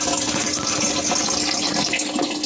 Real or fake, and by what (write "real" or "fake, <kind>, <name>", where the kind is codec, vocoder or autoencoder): real